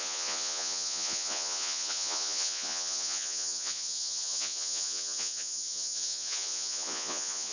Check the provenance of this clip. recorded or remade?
remade